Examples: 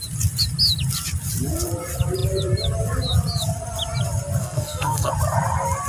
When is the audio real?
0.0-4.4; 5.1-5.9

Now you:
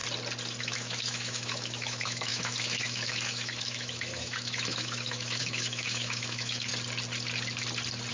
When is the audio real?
0.0-0.6; 6.7-8.1

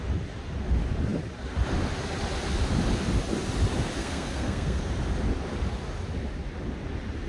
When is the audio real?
0.0-4.0; 4.8-7.3

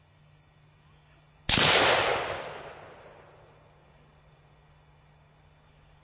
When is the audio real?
0.0-6.0